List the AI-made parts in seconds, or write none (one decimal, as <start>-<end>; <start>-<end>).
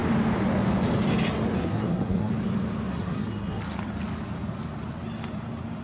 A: 1.6-2.3; 2.9-3.6